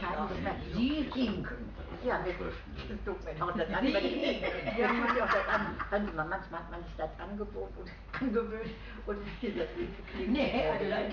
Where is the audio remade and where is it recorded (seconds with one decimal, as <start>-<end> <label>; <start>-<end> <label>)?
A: 0.0-9.2 recorded; 9.2-10.0 remade; 10.0-11.1 recorded